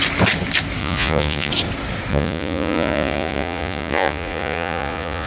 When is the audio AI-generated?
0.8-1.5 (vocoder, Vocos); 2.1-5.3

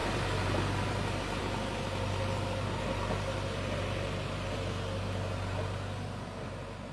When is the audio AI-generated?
none